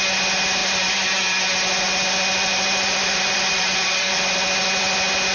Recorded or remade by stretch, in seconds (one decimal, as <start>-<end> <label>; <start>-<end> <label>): 0.0-0.6 recorded; 0.6-1.4 remade; 1.4-2.5 recorded; 2.5-4.2 remade; 4.2-5.3 recorded

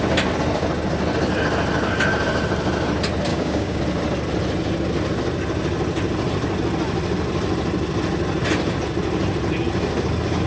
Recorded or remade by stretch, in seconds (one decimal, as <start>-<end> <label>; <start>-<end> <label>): 0.0-3.3 recorded; 3.3-3.8 remade; 3.8-10.5 recorded